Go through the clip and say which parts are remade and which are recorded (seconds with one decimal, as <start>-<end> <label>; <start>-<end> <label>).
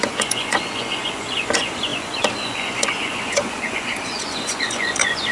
0.0-5.3 remade